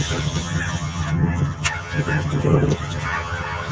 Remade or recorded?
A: remade